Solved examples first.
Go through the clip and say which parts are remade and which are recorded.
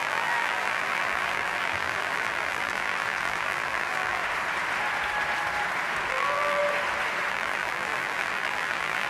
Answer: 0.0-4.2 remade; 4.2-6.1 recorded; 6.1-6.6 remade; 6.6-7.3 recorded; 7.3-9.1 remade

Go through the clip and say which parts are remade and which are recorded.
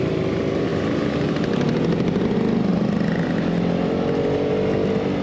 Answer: 0.0-5.2 recorded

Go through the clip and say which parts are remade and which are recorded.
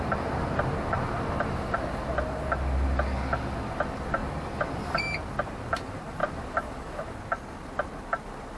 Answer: 0.0-8.6 recorded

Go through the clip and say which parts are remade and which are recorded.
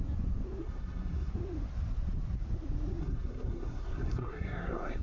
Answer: 0.0-0.6 recorded; 0.6-1.3 remade; 1.3-3.0 recorded; 3.0-5.0 remade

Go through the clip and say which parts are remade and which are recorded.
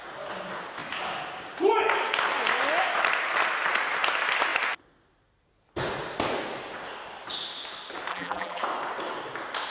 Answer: 0.0-8.1 recorded; 8.1-8.6 remade; 8.6-9.7 recorded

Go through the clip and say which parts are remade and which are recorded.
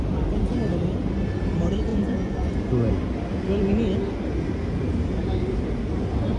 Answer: 0.0-1.9 recorded; 1.9-2.5 remade; 2.5-6.4 recorded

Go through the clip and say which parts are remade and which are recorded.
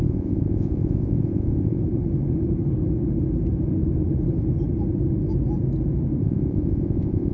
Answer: 0.0-1.8 remade; 1.8-6.2 recorded; 6.2-7.3 remade